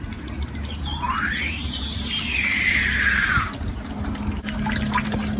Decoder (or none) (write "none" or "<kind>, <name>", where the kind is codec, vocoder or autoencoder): none